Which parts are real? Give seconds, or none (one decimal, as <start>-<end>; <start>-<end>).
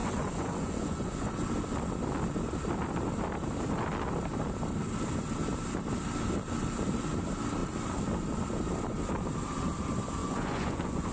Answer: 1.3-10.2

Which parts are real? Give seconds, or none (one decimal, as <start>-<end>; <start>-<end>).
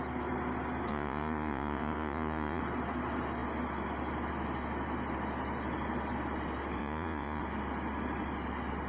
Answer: 0.0-0.9; 2.6-6.8; 7.4-8.9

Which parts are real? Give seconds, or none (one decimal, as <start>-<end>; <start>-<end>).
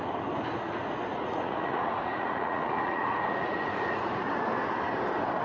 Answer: 0.0-1.1; 4.3-5.4